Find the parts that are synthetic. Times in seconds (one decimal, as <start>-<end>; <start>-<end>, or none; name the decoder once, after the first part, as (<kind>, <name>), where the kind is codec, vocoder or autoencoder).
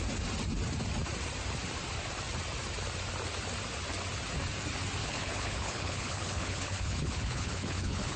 5.0-8.2 (codec, HILCodec)